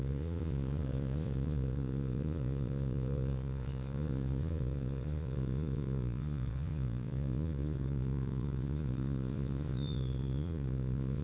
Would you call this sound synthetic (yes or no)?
yes